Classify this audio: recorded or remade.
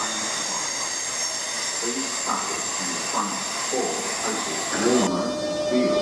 recorded